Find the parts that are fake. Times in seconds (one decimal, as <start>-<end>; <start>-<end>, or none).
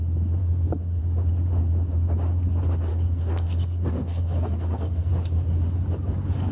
0.4-1.0; 2.9-5.1